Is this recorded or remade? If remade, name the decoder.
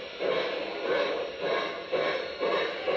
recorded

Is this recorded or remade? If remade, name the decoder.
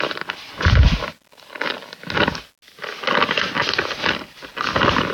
recorded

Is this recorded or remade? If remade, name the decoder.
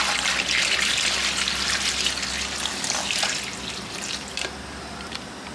recorded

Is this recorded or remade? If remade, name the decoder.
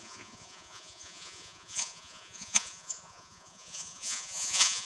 remade, vocoder, Vocos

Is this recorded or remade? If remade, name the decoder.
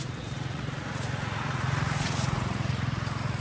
remade, vocoder, Vocos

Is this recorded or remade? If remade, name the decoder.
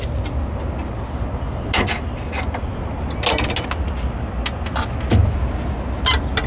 recorded